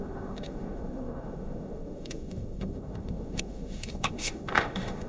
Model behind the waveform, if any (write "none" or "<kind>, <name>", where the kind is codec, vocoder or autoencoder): autoencoder, DAC-VAE